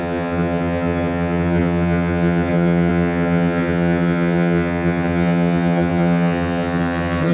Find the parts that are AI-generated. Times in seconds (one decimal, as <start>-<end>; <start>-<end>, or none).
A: 0.0-7.3